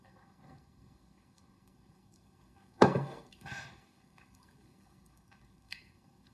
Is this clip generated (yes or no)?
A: yes